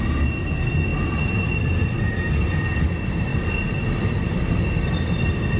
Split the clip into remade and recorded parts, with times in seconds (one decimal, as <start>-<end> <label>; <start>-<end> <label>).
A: 0.0-5.6 recorded